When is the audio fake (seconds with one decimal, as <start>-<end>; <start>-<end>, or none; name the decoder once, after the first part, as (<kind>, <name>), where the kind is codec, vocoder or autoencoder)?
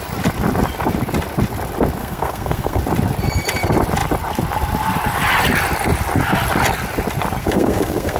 2.0-2.8 (codec, SNAC); 7.4-8.2